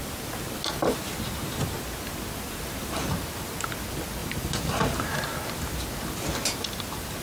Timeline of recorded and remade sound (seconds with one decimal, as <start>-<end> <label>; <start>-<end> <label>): 0.0-4.2 recorded; 4.2-5.1 remade; 5.1-7.2 recorded